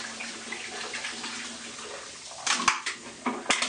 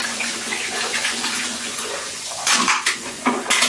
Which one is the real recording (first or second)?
first